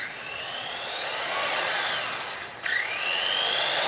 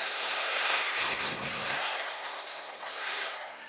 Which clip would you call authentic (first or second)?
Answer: first